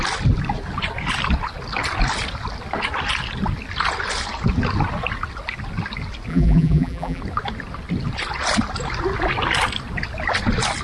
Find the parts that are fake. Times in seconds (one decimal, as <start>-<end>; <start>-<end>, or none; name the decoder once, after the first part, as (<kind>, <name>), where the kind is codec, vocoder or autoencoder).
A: 6.3-7.2 (vocoder, BigVGAN v2)